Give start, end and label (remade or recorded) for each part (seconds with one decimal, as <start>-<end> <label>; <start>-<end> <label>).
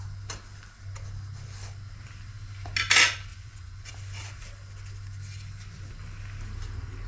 0.0-3.3 recorded; 3.3-3.9 remade; 3.9-7.1 recorded